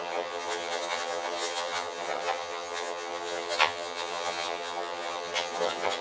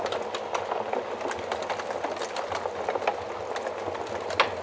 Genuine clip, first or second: second